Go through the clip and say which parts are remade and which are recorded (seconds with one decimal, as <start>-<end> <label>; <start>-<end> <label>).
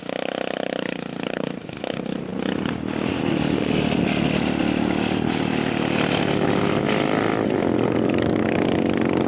0.0-4.6 recorded; 4.6-5.3 remade; 5.3-9.3 recorded